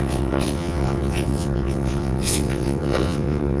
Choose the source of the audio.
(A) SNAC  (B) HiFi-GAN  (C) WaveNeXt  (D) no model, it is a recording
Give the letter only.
C